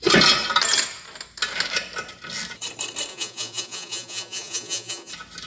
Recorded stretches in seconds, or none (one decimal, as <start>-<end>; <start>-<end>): 0.0-3.1; 5.1-5.5